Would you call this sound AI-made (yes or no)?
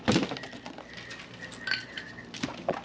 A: no